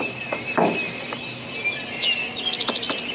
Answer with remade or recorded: recorded